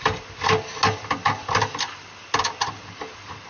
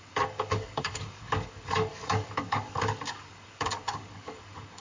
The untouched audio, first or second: first